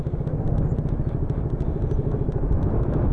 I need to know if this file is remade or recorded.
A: recorded